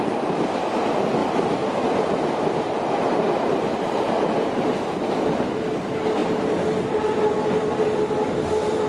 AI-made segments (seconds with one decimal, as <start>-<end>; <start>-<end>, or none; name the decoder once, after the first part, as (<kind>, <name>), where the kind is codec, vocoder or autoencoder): none